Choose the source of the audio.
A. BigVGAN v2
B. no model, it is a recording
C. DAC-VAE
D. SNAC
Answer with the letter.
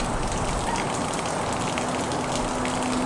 B